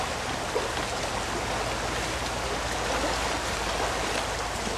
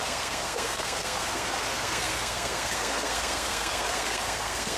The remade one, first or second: second